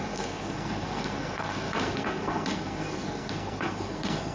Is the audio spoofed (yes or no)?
yes